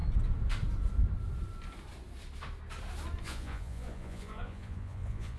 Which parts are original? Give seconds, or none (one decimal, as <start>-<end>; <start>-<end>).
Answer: 0.0-3.2